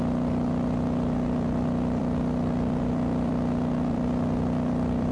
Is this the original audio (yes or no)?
no